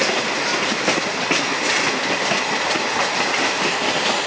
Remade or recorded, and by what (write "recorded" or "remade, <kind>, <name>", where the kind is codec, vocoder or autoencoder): recorded